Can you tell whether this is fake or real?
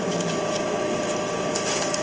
real